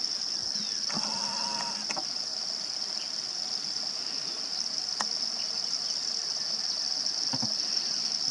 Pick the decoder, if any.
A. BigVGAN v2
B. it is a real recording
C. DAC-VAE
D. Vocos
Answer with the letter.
B